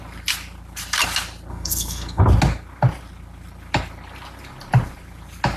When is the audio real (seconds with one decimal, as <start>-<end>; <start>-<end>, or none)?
0.0-1.5; 2.2-5.6